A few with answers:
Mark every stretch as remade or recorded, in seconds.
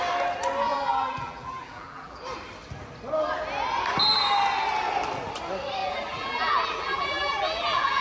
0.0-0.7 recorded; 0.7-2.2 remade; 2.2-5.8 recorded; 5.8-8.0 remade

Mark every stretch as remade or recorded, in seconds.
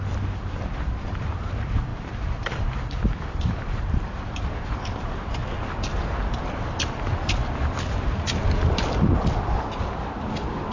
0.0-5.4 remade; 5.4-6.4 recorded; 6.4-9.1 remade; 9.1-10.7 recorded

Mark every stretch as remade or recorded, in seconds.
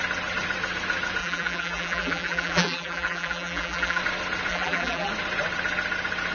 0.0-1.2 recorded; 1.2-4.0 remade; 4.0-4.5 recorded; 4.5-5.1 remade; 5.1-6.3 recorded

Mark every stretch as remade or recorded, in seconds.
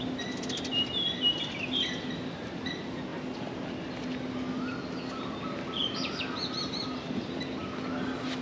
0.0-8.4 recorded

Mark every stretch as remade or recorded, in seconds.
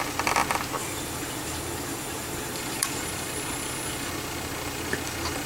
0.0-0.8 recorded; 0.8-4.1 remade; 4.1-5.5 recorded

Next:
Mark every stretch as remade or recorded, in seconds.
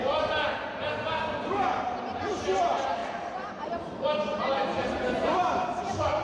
0.0-6.2 remade